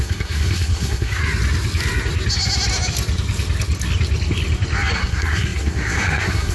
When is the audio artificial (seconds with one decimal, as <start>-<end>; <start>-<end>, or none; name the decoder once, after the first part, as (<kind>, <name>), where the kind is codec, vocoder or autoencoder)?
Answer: 0.0-1.2 (codec, SNAC); 4.9-6.5

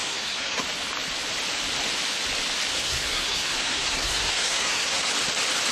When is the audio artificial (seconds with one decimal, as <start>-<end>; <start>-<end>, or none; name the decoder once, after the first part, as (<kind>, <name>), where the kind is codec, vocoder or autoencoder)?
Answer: 0.0-0.6 (codec, SNAC); 2.7-5.1

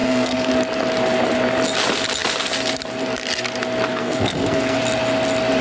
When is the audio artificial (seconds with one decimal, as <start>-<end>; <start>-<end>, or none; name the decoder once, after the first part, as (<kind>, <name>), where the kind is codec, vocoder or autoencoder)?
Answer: 0.0-0.5 (codec, SNAC); 3.9-4.8

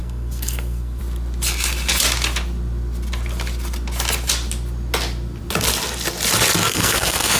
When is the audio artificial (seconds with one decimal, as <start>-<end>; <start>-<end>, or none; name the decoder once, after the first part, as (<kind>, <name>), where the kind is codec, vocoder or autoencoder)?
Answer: 0.0-1.0 (codec, SNAC); 6.6-7.4

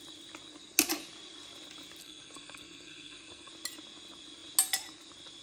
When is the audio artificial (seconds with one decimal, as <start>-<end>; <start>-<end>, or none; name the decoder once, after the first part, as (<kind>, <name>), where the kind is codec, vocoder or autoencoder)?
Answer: 2.0-3.5 (codec, SNAC)